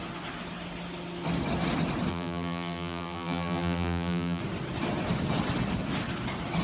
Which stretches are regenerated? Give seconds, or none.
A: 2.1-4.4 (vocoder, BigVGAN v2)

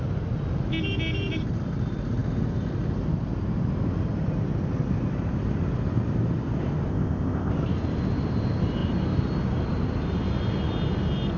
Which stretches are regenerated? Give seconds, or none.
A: 6.9-7.5 (codec, ZipCodec)

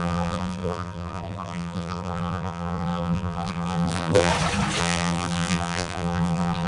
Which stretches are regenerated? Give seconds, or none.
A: 0.0-4.3 (vocoder, BigVGAN v2); 4.8-6.7

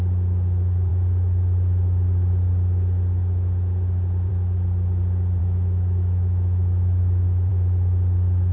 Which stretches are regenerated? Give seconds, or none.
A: 5.4-7.5 (autoencoder, DAC-VAE)

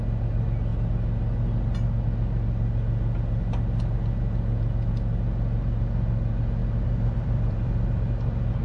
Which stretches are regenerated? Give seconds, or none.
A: 6.6-8.6 (vocoder, BigVGAN v2)

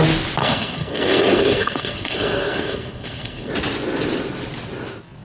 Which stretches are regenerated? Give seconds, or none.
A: 0.4-3.5 (codec, SNAC)

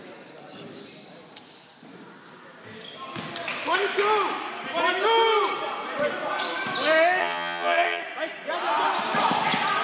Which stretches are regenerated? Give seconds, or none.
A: 7.2-8.0 (vocoder, HiFi-GAN)